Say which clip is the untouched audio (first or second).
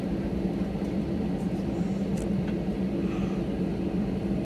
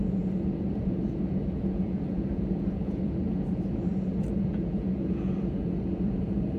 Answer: first